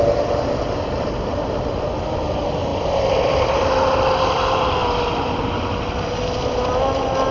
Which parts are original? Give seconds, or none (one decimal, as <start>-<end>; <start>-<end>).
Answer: 0.0-2.7; 3.6-7.3